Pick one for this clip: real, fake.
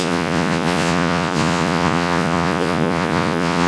fake